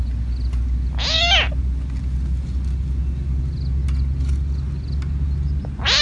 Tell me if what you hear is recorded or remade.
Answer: recorded